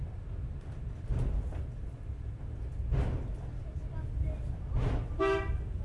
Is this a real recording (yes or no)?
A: yes